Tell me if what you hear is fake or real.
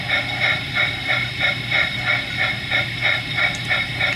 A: fake